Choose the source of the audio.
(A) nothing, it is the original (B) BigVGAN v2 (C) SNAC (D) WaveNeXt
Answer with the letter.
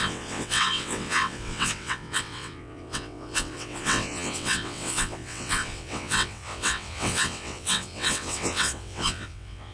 D